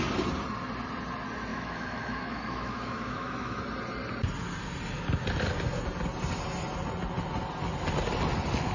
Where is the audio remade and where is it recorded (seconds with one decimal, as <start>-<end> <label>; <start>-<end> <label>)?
0.0-1.5 recorded; 1.5-3.6 remade; 3.6-8.7 recorded